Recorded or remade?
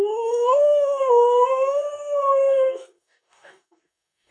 remade